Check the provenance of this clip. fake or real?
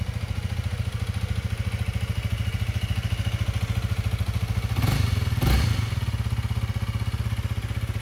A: real